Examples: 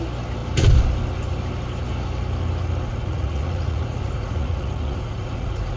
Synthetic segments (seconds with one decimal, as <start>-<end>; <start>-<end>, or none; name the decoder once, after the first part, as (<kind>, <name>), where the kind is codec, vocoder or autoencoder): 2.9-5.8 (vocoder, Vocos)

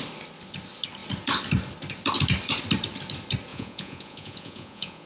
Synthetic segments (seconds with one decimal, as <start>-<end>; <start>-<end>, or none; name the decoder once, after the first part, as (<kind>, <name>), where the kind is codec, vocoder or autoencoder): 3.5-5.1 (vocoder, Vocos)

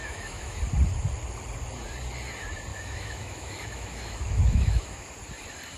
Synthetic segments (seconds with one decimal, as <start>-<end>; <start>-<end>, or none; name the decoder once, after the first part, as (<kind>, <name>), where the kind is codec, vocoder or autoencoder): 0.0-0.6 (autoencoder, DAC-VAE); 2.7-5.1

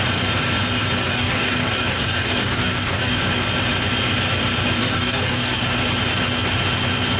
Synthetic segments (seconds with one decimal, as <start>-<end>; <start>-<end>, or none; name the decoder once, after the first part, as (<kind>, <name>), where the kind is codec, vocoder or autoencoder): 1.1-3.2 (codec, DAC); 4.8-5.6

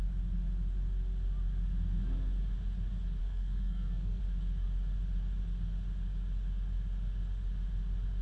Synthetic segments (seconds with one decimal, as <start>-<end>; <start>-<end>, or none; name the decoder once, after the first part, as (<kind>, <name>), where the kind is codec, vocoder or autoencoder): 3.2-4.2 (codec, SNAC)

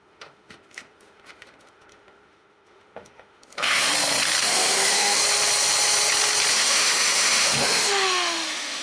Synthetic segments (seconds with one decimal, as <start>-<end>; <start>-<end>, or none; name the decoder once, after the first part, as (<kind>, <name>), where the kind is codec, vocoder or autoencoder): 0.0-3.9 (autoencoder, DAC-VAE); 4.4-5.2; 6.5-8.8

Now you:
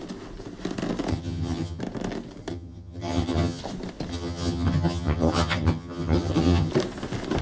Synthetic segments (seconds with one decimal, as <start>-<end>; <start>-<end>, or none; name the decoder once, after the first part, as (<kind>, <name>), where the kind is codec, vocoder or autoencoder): 1.1-1.8 (vocoder, HiFi-GAN); 2.5-3.6; 4.1-6.7

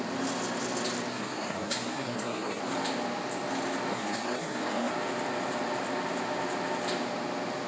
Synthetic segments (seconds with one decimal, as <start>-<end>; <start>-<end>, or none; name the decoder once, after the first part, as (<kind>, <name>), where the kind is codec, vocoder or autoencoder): 1.1-2.6 (codec, SNAC); 3.9-4.9